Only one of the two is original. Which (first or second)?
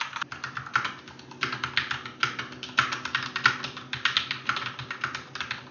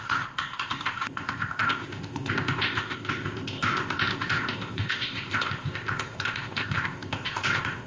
first